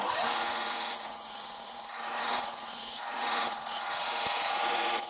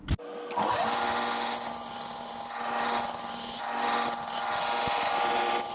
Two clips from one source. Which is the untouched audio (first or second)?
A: second